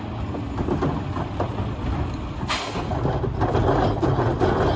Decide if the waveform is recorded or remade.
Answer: recorded